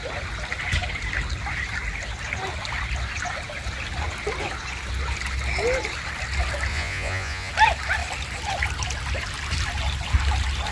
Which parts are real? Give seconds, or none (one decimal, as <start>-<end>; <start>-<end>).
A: 0.0-6.7; 7.5-10.7